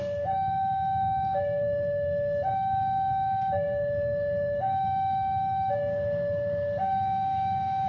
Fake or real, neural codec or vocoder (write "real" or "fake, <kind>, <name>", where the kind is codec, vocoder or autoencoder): fake, codec, DAC